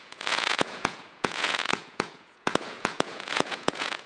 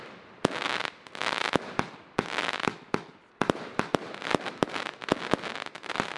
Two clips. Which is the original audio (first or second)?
second